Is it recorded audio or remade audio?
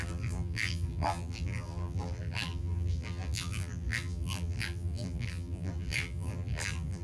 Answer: remade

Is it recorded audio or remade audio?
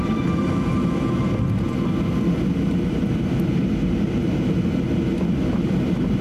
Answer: recorded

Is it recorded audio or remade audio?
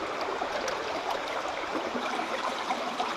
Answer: remade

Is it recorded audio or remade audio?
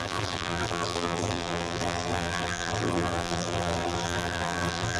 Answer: remade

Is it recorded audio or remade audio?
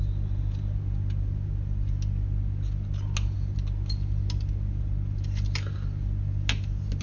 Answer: recorded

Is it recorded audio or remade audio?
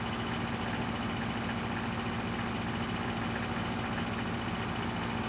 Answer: recorded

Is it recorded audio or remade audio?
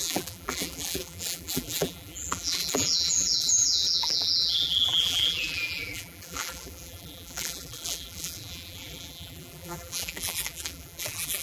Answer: remade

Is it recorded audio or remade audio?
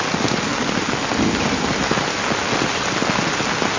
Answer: recorded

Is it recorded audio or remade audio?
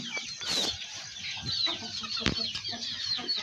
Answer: recorded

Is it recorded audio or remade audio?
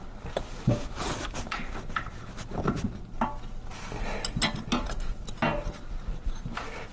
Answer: recorded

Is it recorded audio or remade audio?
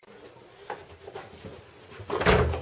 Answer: recorded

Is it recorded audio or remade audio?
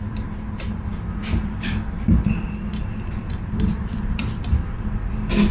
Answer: remade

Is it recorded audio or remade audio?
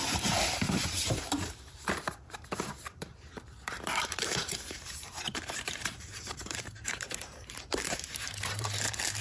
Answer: remade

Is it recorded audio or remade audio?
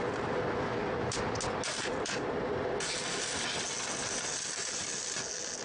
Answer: recorded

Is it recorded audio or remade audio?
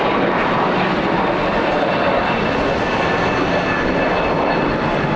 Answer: recorded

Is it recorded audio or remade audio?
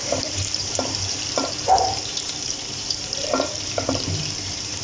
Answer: remade